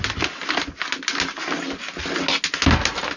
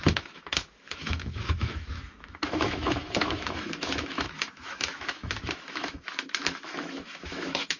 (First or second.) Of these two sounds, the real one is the first